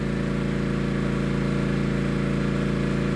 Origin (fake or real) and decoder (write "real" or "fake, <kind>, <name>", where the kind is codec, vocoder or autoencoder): real